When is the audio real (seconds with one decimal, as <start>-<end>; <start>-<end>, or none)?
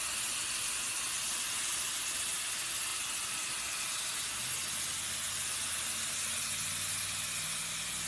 0.0-8.1